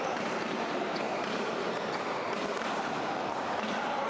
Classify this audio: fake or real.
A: fake